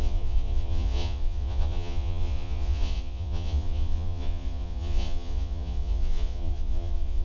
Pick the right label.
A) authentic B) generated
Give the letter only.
B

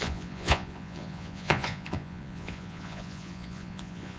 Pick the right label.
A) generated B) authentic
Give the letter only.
A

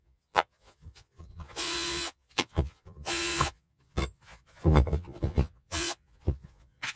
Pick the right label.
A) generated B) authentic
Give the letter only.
A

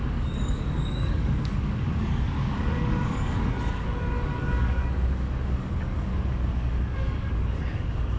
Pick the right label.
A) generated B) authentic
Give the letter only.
A